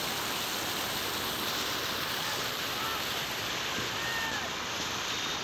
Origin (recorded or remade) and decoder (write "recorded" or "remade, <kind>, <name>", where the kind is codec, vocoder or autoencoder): recorded